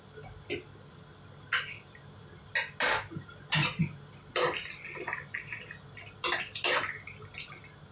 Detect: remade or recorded recorded